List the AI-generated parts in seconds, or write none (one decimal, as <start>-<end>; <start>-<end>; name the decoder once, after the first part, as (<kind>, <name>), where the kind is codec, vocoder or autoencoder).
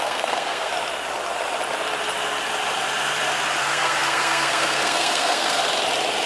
0.0-0.7 (codec, SNAC); 3.6-5.6